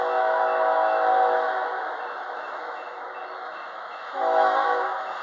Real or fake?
fake